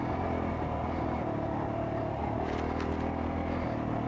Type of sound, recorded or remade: recorded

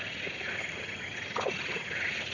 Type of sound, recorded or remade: recorded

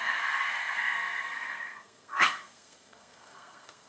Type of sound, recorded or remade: remade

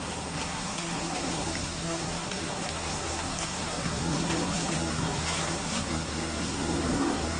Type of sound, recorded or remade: remade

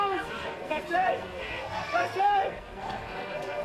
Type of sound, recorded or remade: remade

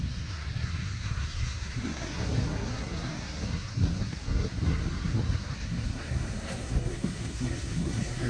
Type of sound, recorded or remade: remade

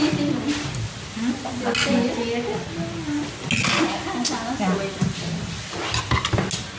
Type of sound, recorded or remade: recorded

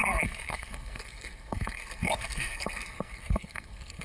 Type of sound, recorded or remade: remade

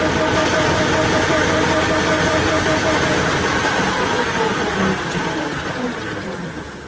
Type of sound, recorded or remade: recorded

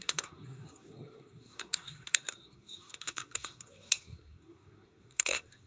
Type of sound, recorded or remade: remade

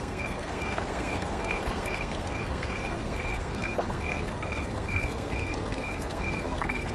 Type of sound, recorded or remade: remade